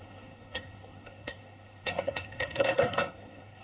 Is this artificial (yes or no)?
yes